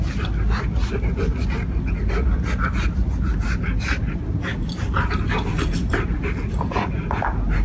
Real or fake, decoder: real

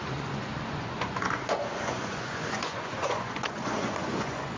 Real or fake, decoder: fake, vocoder, Vocos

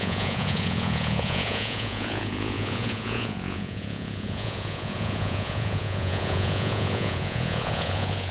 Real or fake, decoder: fake, vocoder, Vocos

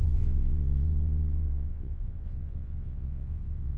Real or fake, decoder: fake, vocoder, Vocos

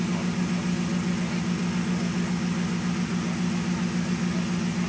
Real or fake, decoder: real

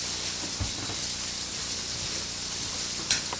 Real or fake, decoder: real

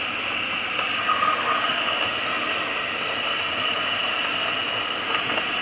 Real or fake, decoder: real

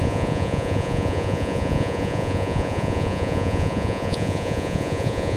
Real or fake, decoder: fake, vocoder, Vocos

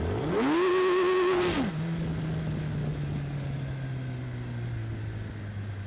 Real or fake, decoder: real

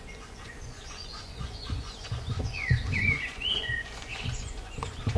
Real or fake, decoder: fake, vocoder, Vocos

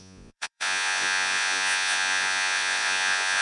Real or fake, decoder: fake, vocoder, Vocos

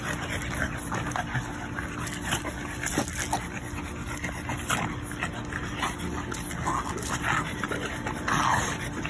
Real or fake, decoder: real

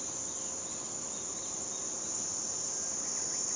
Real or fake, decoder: real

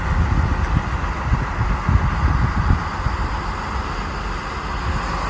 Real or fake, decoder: real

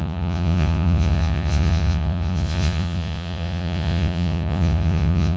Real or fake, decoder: fake, vocoder, Vocos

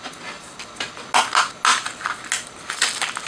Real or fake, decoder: real